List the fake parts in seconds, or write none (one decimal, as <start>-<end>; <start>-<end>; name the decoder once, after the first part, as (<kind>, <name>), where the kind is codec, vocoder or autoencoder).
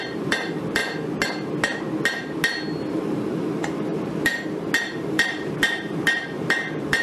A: 0.0-0.8 (vocoder, BigVGAN v2); 2.9-4.3; 4.8-7.0